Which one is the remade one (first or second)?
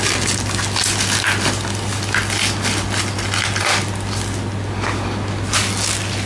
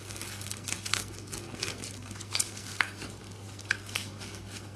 second